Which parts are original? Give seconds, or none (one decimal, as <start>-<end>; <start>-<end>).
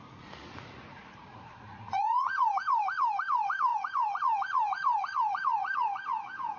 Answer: none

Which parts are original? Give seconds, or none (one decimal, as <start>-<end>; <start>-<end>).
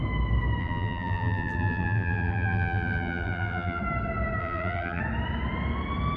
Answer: 0.0-0.6; 3.8-4.4; 5.0-6.2